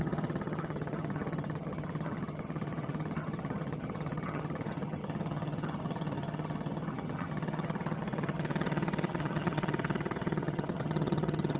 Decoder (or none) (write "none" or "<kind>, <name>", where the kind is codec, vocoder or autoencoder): vocoder, HiFi-GAN